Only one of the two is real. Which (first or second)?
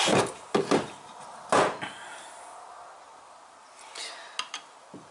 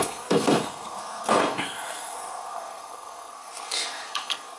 first